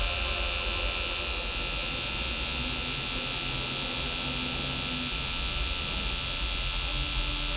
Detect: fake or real real